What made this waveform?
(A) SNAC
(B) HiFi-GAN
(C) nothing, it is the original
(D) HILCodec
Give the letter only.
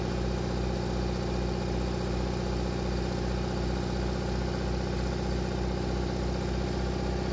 C